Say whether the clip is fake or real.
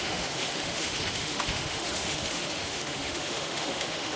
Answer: fake